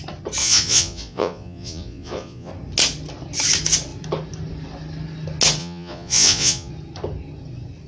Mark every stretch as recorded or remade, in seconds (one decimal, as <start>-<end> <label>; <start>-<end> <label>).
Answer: 0.0-0.4 recorded; 0.4-2.5 remade; 2.5-5.6 recorded; 5.6-6.7 remade; 6.7-7.9 recorded